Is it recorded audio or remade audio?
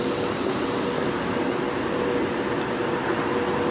recorded